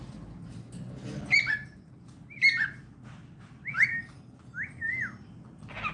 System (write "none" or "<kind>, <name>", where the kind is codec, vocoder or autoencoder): none